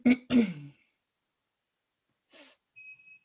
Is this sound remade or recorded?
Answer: recorded